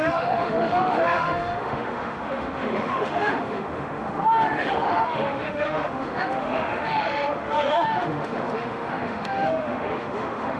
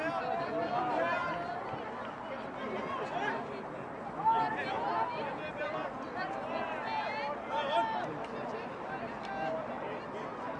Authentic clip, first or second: second